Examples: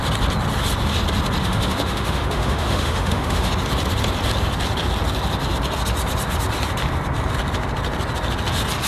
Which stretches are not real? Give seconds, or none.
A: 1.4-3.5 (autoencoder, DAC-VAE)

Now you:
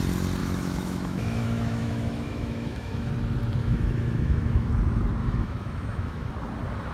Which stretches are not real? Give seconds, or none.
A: 0.4-3.1 (autoencoder, DAC-VAE); 3.6-4.7; 5.2-6.3

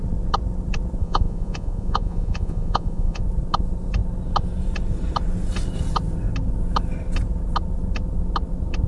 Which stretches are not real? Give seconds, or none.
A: 1.0-3.2 (vocoder, Vocos)

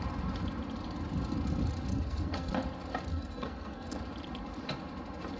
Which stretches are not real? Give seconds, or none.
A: 1.9-2.5 (codec, SNAC); 3.1-3.9

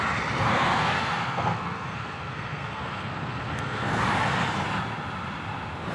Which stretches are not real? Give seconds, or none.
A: 0.5-4.0 (codec, SNAC)

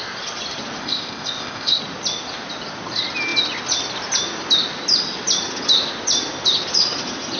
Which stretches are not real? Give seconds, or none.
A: 0.8-1.8 (codec, ZipCodec)

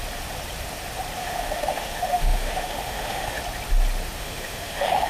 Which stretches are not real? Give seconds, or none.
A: 1.2-3.4 (autoencoder, DAC-VAE); 4.2-5.1